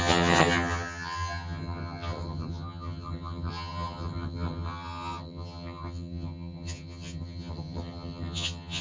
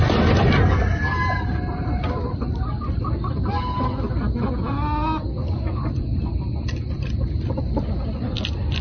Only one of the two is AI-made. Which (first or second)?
first